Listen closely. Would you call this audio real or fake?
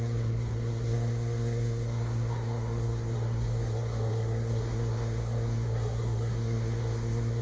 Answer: fake